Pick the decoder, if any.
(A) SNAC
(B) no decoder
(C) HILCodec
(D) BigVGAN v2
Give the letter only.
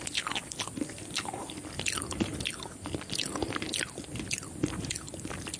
B